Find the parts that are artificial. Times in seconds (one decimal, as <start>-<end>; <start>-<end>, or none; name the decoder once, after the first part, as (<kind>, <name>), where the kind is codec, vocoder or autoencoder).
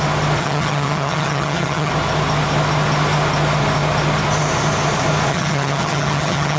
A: 0.4-1.9 (vocoder, HiFi-GAN); 5.3-6.6